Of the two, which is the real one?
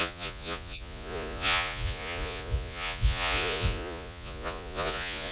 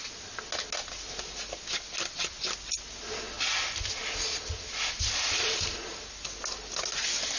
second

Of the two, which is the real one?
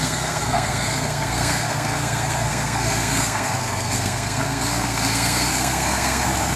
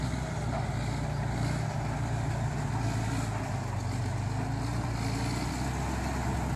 second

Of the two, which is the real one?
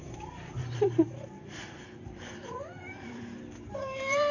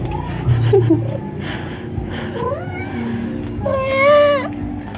second